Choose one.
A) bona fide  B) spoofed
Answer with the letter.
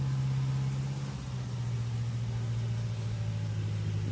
A